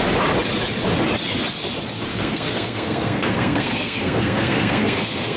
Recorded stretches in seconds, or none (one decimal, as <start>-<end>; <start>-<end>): 0.0-2.1